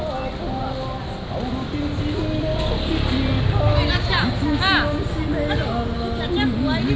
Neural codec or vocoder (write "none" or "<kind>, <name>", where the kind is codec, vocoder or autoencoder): none